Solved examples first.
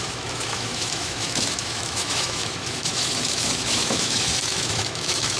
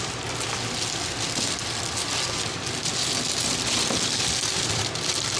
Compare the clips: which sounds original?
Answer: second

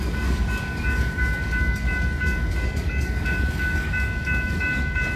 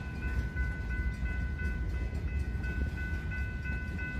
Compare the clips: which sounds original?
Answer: second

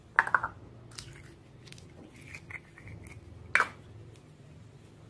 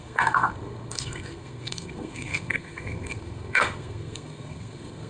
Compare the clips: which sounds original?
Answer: first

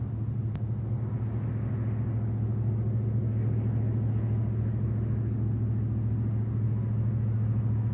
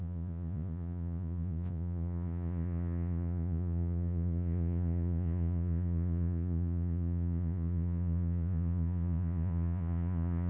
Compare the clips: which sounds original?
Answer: first